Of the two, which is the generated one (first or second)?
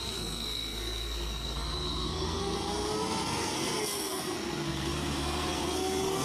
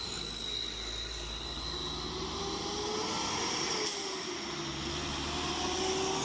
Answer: first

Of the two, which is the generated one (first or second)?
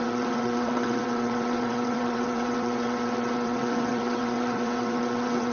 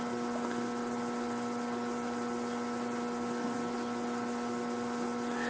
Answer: first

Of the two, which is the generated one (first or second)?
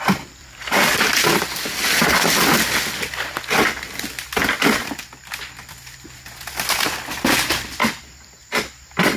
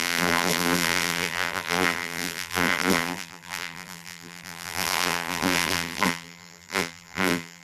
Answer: second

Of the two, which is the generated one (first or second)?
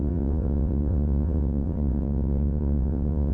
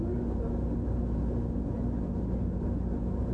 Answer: first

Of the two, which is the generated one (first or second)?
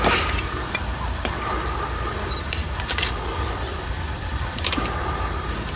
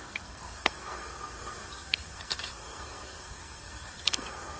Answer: second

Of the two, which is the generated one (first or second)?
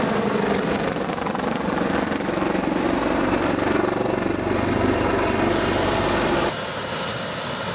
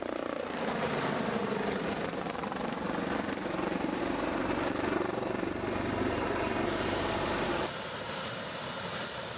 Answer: second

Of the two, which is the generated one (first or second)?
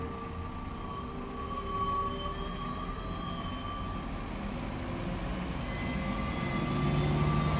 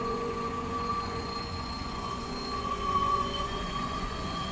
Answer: second